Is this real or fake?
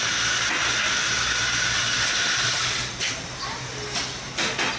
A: real